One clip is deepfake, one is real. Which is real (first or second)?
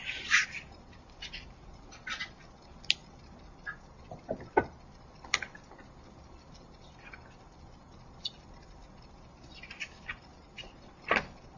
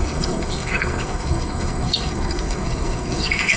first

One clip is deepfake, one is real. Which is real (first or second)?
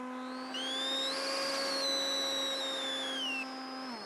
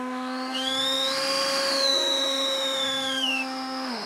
first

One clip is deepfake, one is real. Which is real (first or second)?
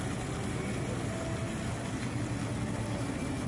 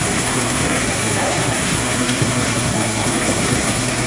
first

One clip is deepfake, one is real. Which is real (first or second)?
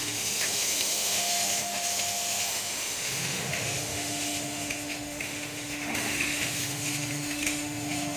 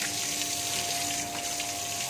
second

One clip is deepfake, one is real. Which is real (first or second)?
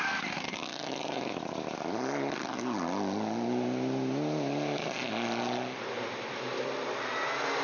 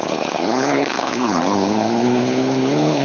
first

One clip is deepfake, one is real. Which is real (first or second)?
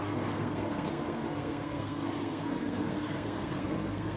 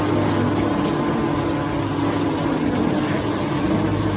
second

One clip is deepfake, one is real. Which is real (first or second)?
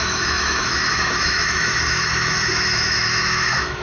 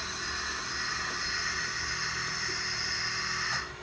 second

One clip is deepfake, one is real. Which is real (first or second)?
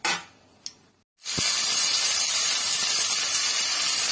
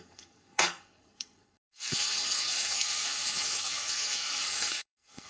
first